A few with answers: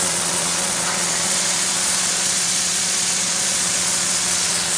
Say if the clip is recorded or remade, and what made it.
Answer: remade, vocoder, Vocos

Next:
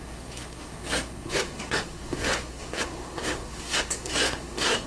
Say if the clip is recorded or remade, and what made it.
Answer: remade, codec, SNAC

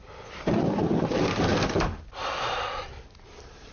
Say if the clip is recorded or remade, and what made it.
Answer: recorded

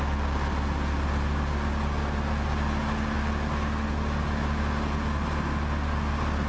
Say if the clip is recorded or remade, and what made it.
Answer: recorded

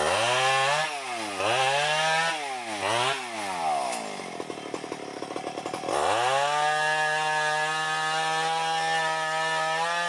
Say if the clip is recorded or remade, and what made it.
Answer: recorded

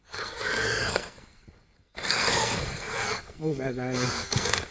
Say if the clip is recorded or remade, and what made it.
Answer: remade, codec, SNAC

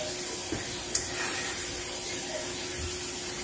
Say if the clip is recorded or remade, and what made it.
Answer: recorded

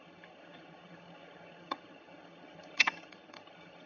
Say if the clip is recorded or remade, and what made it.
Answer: remade, vocoder, HiFi-GAN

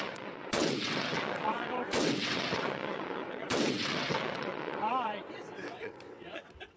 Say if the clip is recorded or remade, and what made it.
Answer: remade, vocoder, WaveNeXt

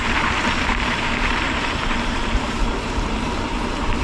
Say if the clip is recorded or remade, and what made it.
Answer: remade, vocoder, BigVGAN v2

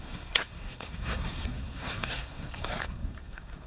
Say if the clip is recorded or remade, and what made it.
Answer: remade, codec, SNAC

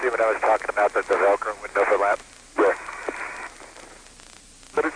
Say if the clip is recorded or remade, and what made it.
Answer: recorded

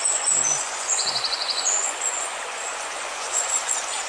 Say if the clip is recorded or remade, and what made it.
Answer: remade, vocoder, Vocos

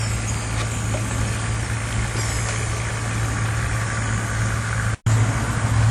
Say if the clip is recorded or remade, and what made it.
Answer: recorded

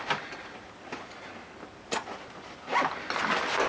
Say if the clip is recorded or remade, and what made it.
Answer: recorded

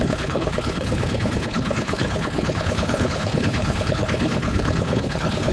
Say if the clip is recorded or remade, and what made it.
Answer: remade, codec, HILCodec